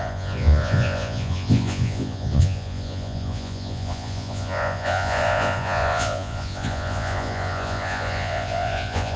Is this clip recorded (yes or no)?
no